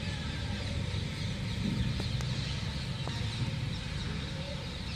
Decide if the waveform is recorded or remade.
recorded